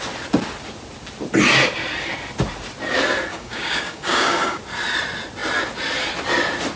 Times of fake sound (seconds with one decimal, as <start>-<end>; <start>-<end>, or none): 3.3-4.6